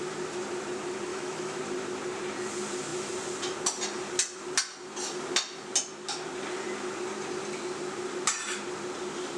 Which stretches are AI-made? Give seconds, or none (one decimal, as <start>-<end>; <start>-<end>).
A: 1.1-1.6